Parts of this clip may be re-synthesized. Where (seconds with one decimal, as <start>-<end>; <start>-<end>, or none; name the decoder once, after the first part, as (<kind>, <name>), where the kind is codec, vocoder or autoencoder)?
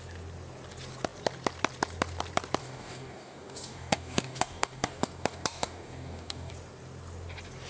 2.6-6.5 (codec, DAC)